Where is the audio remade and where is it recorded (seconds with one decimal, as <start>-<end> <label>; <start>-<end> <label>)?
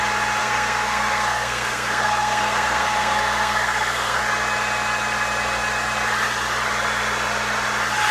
0.0-0.4 recorded; 0.4-4.2 remade; 4.2-8.1 recorded